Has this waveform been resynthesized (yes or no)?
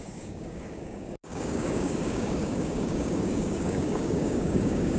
yes